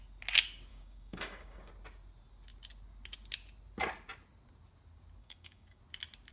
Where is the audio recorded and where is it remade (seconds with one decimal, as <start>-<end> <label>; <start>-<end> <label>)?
0.0-0.7 recorded; 0.7-1.7 remade; 1.7-5.2 recorded; 5.2-5.8 remade; 5.8-6.3 recorded